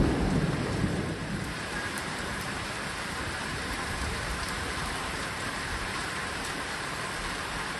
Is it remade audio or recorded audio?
remade